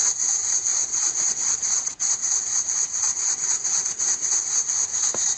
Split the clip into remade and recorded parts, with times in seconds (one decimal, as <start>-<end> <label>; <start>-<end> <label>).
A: 0.0-0.7 recorded; 0.7-2.1 remade; 2.1-3.1 recorded; 3.1-4.0 remade; 4.0-5.4 recorded